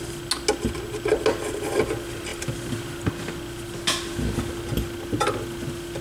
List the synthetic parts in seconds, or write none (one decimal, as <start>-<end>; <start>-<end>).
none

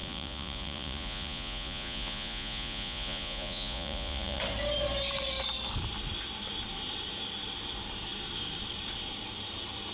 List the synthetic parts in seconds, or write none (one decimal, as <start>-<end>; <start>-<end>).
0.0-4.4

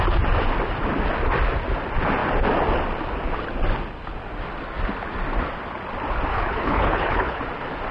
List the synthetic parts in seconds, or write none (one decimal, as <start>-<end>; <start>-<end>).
6.3-7.4